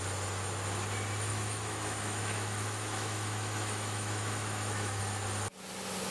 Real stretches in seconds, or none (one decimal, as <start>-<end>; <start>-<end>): 0.0-1.3; 5.0-6.1